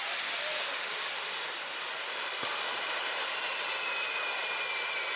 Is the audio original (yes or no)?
yes